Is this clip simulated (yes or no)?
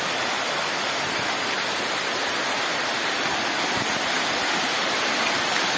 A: no